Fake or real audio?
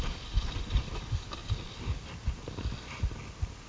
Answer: real